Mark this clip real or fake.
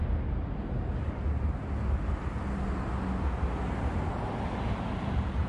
real